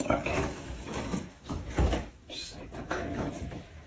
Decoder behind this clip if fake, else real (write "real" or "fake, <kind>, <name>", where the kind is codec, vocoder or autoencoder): fake, autoencoder, DAC-VAE